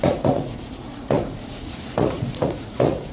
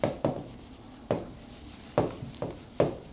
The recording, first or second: second